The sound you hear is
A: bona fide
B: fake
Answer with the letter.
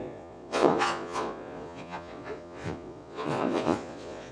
B